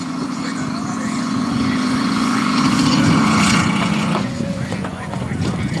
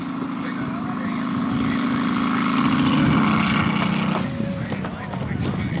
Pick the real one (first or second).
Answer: second